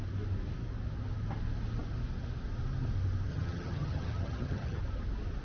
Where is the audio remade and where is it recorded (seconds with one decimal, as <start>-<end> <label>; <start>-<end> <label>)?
0.0-3.3 recorded; 3.3-4.8 remade; 4.8-5.4 recorded